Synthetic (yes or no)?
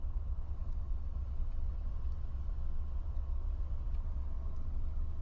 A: yes